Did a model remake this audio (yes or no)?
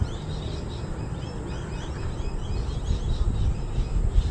no